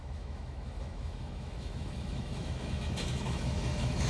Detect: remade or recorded remade